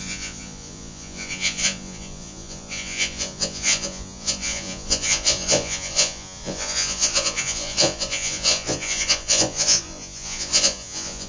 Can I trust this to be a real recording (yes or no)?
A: no